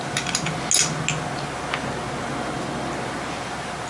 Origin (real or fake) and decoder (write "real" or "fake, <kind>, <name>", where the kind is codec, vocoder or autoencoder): real